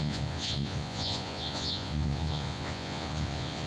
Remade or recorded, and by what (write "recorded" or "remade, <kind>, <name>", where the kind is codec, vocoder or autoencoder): remade, vocoder, Vocos